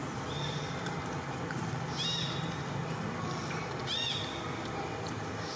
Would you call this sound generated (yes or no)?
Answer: no